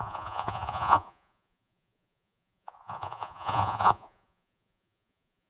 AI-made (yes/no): yes